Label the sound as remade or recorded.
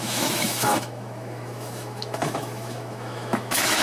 remade